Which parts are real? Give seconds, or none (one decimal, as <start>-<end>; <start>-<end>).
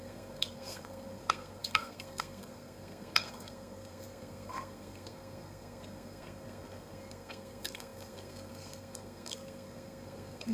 none